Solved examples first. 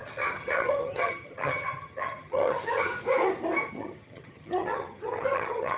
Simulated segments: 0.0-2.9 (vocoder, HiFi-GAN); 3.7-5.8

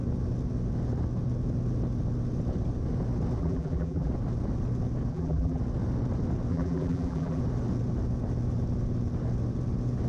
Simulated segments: 3.4-4.1 (vocoder, BigVGAN v2); 5.1-5.6; 6.5-7.4

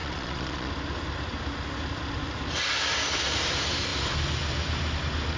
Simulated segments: 0.0-0.7 (vocoder, Vocos)

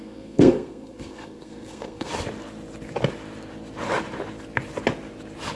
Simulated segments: 0.0-2.1 (codec, SNAC)

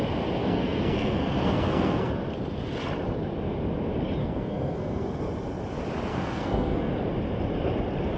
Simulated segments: 0.4-2.1 (codec, SNAC); 4.2-5.2; 6.1-6.9

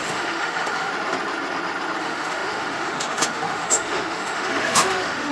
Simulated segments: 0.0-0.9 (autoencoder, DAC-VAE); 2.0-5.3

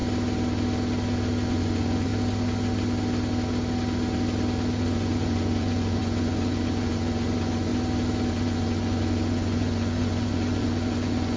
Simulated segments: 1.5-2.1 (vocoder, Vocos); 4.8-7.7; 8.3-11.4